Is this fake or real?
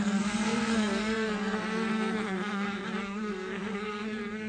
fake